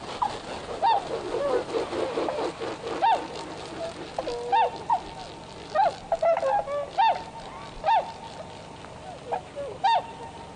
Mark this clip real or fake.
real